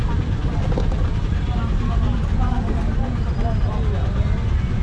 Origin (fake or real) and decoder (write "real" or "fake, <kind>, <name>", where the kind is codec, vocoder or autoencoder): real